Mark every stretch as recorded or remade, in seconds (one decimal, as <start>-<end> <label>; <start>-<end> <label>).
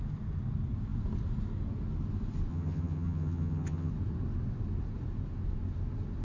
0.0-2.5 recorded; 2.5-3.9 remade; 3.9-6.2 recorded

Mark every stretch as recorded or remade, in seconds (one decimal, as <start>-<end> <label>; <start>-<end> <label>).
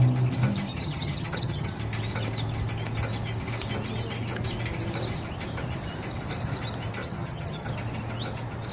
0.0-0.7 recorded; 0.7-1.7 remade; 1.7-7.0 recorded; 7.0-7.7 remade; 7.7-8.7 recorded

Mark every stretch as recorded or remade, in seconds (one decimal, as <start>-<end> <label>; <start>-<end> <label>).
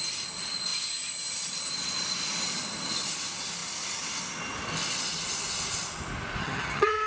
0.0-6.4 recorded; 6.4-7.1 remade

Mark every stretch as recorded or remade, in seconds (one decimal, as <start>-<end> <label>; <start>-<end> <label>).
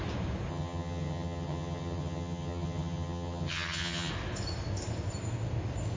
0.0-0.5 recorded; 0.5-4.1 remade; 4.1-6.0 recorded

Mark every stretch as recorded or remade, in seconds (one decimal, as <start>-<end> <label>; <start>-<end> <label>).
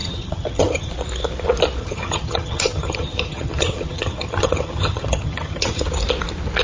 0.0-0.9 remade; 0.9-1.8 recorded; 1.8-5.8 remade; 5.8-6.6 recorded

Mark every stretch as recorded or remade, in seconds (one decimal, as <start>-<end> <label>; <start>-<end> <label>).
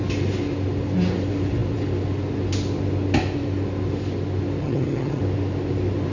0.0-4.6 recorded; 4.6-5.2 remade; 5.2-6.1 recorded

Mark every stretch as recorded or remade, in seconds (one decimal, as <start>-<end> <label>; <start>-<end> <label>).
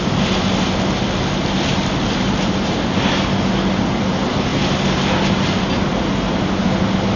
0.0-7.2 recorded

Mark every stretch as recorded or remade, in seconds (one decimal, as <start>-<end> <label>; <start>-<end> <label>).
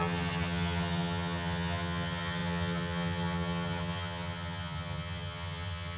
0.0-6.0 remade